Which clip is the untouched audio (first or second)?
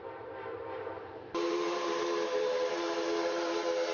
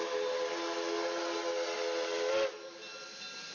second